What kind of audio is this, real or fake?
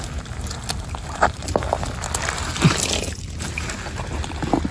real